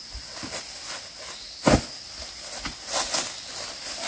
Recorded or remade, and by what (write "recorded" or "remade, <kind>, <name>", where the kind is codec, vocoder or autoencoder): recorded